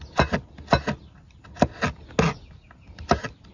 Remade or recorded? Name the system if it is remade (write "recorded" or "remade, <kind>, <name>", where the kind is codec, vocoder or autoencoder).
recorded